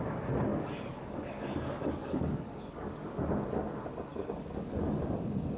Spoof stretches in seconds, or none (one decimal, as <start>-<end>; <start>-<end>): 0.5-2.9; 4.1-5.0